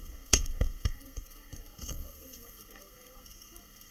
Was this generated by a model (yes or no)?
yes